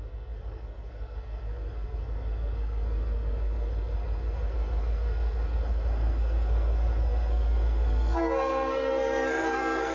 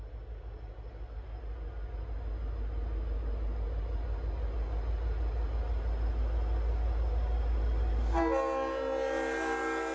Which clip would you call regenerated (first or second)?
first